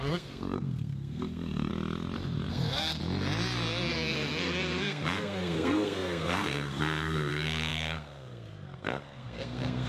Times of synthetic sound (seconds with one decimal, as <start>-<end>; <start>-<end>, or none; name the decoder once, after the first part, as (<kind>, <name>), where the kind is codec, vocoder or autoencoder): 0.0-1.7 (codec, SNAC); 2.5-3.0; 3.9-9.9